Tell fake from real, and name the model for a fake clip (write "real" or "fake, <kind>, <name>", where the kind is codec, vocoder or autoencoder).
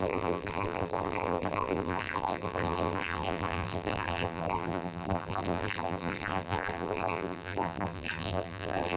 fake, vocoder, BigVGAN v2